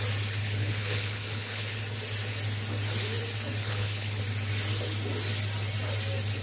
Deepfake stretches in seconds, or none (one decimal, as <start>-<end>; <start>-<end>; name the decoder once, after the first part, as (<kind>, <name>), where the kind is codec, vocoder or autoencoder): 0.4-1.8 (codec, HILCodec); 3.6-4.2